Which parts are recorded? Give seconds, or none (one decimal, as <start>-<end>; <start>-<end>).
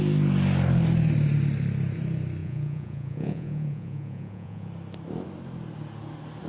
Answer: 0.0-2.4; 4.7-6.5